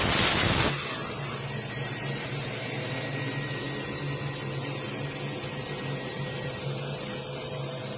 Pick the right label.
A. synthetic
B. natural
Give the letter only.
B